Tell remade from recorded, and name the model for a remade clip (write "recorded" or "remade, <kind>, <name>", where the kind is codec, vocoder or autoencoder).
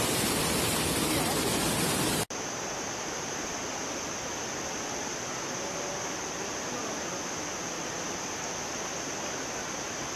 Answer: recorded